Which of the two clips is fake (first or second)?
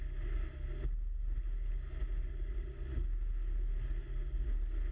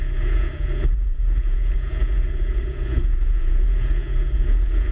second